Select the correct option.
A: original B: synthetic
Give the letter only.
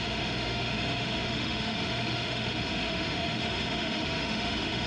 B